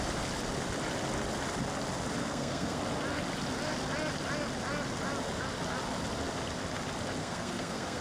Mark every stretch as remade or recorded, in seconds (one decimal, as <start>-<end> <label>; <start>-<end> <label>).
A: 0.0-2.2 recorded; 2.2-2.8 remade; 2.8-7.2 recorded; 7.2-8.0 remade